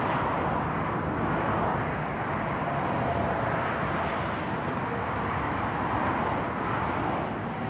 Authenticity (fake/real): real